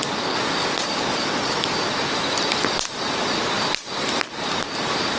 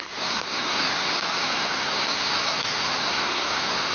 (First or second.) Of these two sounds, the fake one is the second